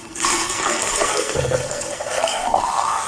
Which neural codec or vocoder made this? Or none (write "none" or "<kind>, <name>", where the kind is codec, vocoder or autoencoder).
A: codec, SNAC